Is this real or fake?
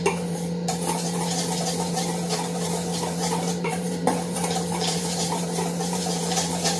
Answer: fake